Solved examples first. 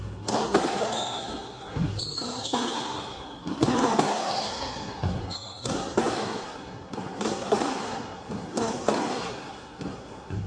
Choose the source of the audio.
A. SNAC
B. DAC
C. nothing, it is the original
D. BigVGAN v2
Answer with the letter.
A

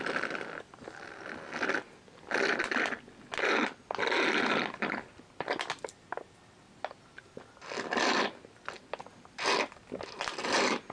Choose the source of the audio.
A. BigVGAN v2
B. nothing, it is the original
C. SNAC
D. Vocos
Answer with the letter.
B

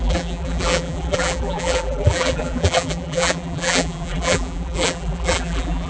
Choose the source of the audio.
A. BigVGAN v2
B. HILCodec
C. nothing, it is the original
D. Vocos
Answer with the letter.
A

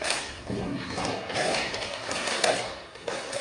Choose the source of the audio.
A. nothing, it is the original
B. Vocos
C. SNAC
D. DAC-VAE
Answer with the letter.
C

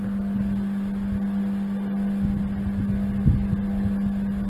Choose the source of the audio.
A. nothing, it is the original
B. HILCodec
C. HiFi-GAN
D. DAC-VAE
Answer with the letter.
A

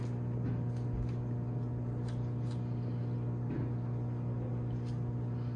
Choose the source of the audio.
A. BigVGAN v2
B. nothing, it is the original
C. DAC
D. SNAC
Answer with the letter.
B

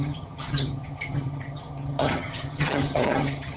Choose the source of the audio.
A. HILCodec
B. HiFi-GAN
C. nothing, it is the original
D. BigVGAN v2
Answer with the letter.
B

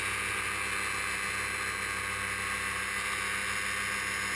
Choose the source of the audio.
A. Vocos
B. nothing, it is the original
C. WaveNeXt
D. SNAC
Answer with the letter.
B